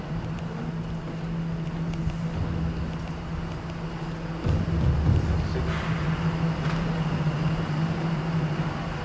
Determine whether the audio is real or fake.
real